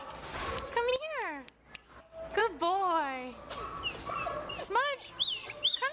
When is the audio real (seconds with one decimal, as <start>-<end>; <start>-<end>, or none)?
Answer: 0.0-0.9; 2.0-5.9